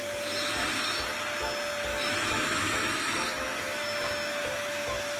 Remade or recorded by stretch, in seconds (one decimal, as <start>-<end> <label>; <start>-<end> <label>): 0.0-1.9 recorded; 1.9-5.2 remade